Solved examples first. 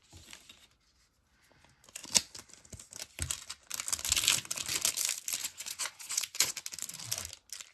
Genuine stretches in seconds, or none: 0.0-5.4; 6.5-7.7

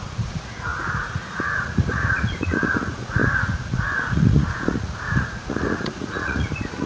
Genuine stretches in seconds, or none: none

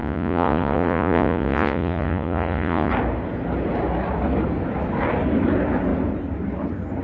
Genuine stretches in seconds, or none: 2.9-7.0

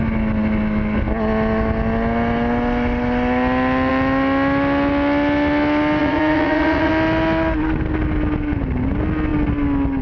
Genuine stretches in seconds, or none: 0.0-6.0; 6.9-10.0

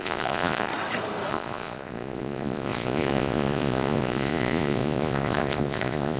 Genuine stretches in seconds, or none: 0.7-1.3

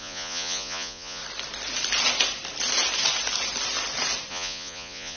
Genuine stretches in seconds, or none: 1.2-4.3